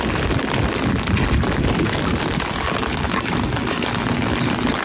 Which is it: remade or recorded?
recorded